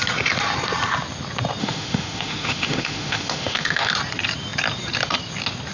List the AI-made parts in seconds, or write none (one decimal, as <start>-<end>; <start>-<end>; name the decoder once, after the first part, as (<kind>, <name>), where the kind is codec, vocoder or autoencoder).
1.6-3.9 (autoencoder, DAC-VAE)